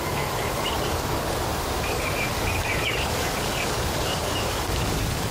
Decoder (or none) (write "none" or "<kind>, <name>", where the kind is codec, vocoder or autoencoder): codec, DAC